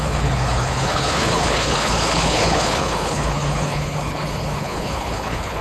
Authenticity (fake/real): fake